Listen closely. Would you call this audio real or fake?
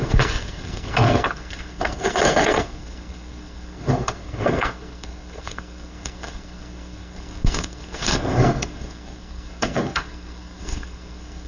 fake